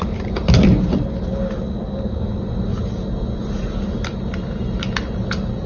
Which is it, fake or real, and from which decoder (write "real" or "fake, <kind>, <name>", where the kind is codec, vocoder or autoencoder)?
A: real